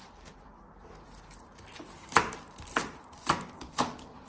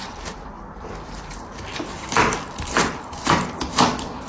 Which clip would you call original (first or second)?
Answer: first